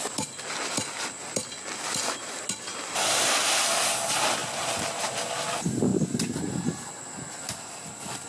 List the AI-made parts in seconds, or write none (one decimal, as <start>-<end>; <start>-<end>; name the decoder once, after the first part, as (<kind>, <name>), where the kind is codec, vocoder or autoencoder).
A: 2.7-3.3 (vocoder, BigVGAN v2); 4.4-5.1